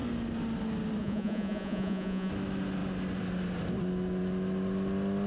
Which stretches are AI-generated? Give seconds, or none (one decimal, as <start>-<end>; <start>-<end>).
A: 1.0-2.3